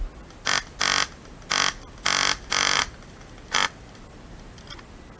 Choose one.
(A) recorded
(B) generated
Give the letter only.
A